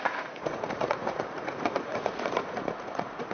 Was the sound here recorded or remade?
remade